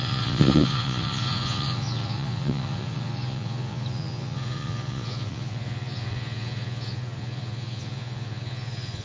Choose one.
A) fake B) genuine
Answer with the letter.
A